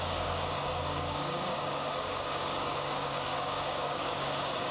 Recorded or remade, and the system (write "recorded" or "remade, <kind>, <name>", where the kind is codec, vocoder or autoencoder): remade, codec, DAC